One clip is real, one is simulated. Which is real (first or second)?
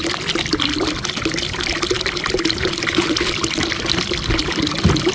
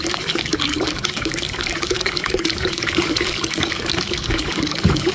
first